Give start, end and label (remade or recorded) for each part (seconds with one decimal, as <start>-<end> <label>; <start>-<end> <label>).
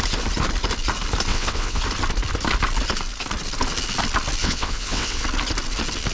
0.0-1.3 recorded; 1.3-1.8 remade; 1.8-4.4 recorded; 4.4-5.2 remade; 5.2-6.1 recorded